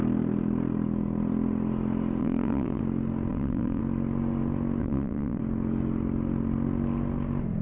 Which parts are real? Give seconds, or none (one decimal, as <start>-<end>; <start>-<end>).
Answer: 0.0-2.2; 2.8-3.3; 3.8-4.8; 5.4-7.6